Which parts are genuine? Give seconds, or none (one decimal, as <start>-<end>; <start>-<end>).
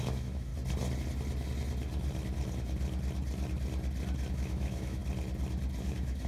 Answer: 0.5-4.3; 5.0-5.8